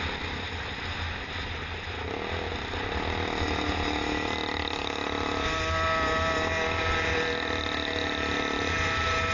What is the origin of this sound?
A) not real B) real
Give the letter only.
B